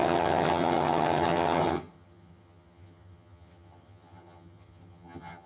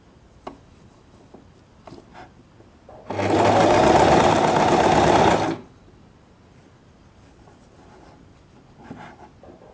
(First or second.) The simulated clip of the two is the first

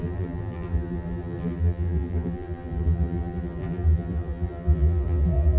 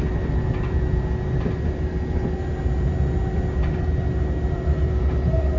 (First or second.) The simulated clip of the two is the first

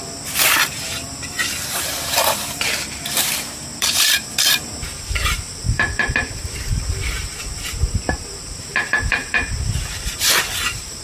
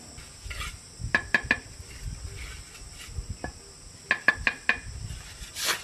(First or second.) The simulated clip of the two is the first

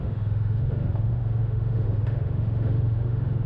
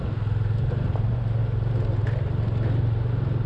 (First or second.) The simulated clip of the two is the first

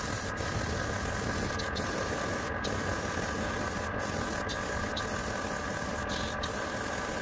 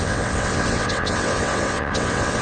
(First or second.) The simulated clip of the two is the second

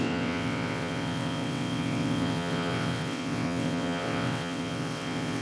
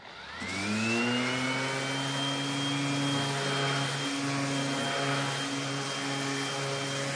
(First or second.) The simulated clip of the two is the first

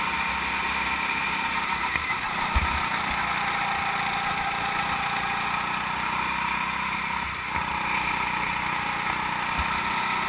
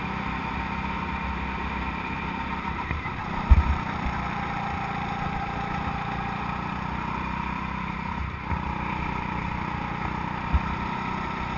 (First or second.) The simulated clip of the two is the second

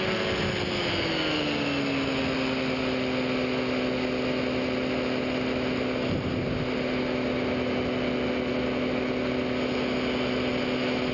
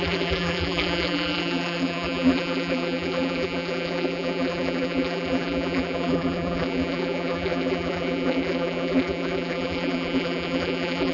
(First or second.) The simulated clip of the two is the second